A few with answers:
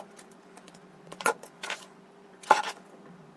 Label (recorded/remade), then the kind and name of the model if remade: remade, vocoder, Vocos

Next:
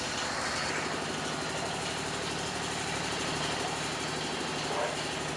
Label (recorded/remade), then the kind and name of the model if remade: recorded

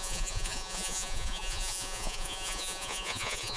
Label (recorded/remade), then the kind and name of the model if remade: remade, vocoder, Vocos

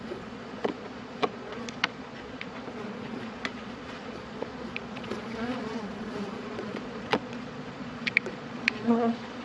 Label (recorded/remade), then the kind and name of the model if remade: remade, vocoder, Vocos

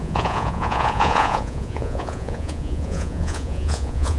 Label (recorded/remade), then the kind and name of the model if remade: remade, vocoder, Vocos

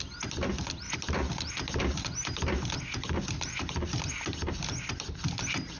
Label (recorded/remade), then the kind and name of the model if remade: recorded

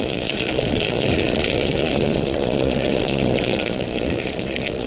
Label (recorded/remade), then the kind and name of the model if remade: remade, vocoder, Vocos